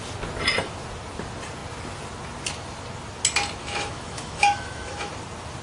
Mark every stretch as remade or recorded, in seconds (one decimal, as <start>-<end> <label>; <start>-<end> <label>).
0.0-3.6 recorded; 3.6-5.1 remade; 5.1-5.6 recorded